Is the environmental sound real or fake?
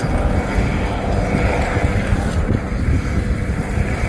real